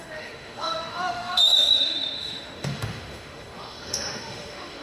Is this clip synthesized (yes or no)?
yes